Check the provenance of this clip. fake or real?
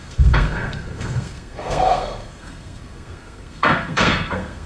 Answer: fake